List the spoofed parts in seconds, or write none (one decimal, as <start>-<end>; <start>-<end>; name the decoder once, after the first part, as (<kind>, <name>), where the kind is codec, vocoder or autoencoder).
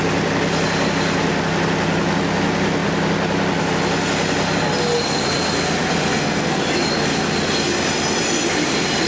6.1-6.6 (codec, SNAC)